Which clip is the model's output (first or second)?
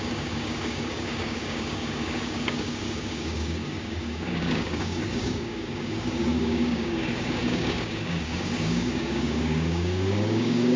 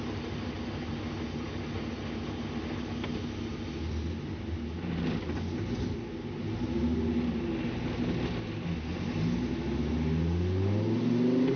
first